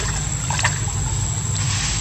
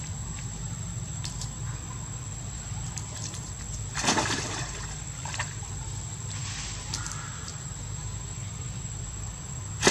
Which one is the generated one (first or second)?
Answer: second